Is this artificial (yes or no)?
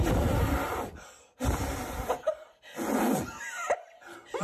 no